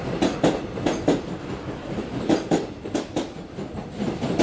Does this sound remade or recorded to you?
recorded